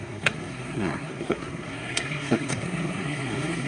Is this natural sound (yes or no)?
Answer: no